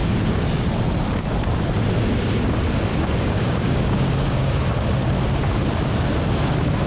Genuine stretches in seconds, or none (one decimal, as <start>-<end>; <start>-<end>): 0.6-2.9; 4.6-6.9